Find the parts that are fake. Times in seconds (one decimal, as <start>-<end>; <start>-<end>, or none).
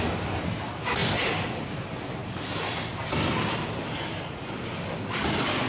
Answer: 2.2-5.7